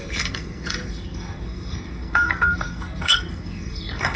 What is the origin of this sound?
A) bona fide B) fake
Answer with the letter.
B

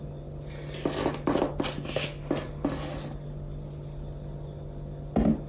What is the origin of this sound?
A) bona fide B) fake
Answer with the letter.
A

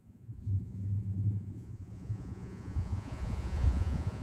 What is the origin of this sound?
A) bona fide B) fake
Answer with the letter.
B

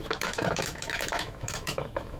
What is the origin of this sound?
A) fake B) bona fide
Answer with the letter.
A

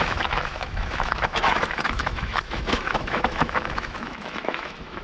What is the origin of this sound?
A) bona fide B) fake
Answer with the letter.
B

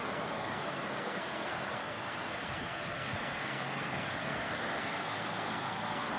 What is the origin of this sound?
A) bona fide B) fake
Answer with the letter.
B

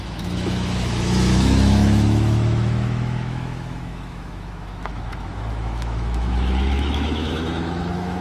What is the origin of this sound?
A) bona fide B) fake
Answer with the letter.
B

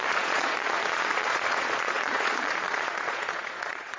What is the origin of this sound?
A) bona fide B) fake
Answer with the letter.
B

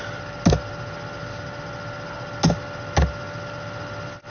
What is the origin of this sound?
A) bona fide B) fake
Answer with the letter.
A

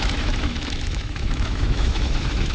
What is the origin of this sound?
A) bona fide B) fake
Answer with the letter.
B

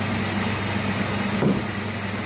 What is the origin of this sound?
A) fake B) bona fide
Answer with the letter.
B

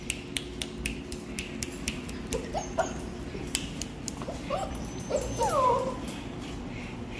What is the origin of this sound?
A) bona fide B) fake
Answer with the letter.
A